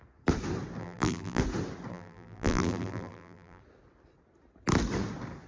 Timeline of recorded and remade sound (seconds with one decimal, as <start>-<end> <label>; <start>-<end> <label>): 0.0-0.8 recorded; 0.8-1.4 remade; 1.4-1.9 recorded; 1.9-3.6 remade; 3.6-5.5 recorded